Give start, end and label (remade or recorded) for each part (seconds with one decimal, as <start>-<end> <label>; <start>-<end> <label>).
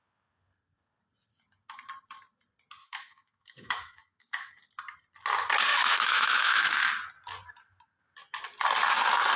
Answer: 0.0-2.8 recorded; 2.8-4.5 remade; 4.5-5.7 recorded; 5.7-6.8 remade; 6.8-9.4 recorded